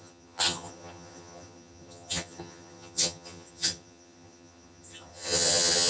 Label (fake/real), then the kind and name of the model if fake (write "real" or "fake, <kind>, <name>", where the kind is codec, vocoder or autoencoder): fake, vocoder, HiFi-GAN